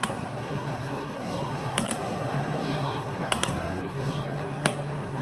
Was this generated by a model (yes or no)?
yes